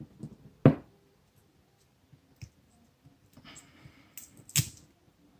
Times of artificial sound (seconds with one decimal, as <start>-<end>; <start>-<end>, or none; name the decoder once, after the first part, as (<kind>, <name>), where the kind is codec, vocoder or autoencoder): none